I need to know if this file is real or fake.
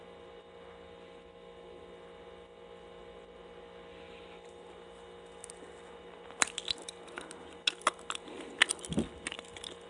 real